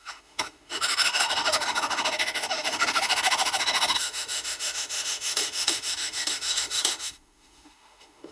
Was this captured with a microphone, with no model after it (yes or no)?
no